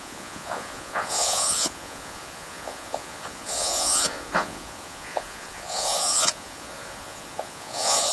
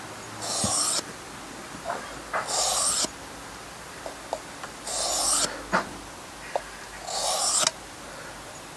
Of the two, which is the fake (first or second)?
first